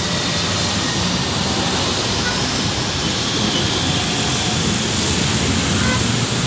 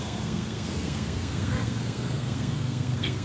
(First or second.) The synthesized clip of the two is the second